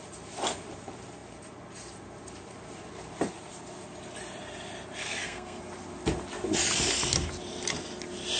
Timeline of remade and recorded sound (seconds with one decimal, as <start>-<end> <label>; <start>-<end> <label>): 0.0-5.0 recorded; 5.0-5.6 remade; 5.6-8.4 recorded